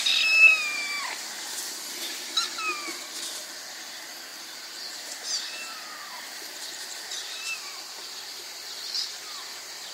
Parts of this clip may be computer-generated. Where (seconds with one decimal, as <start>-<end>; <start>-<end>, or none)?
none